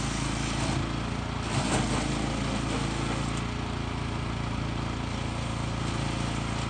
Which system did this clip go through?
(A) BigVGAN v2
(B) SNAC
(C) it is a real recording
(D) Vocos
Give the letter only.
C